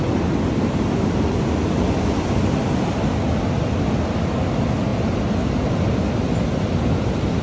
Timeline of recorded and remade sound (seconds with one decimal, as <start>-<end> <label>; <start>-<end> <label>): 0.0-7.4 recorded